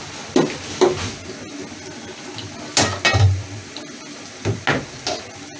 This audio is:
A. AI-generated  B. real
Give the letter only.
B